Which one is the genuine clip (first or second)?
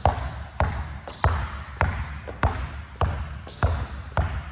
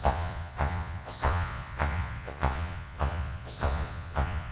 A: first